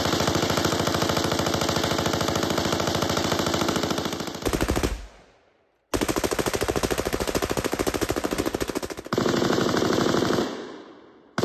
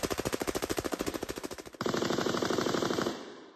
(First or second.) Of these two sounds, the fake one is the second